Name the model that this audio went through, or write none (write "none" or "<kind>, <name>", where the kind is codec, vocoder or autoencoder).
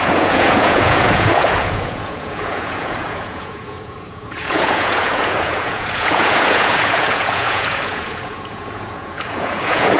vocoder, Vocos